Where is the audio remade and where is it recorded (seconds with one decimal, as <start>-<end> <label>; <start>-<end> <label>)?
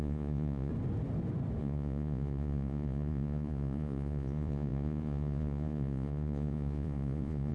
0.0-0.7 remade; 0.7-1.6 recorded; 1.6-7.5 remade